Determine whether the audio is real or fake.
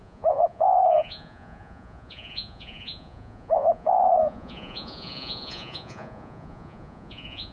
fake